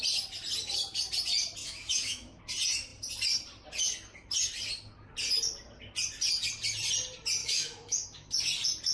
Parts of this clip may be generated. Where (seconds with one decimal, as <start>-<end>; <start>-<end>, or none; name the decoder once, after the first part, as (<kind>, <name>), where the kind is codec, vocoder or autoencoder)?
1.6-2.4 (autoencoder, DAC-VAE); 7.4-8.3